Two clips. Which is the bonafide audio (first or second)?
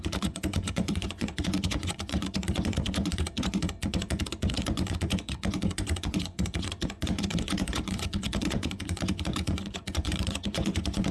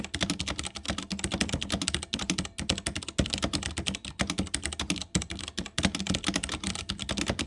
second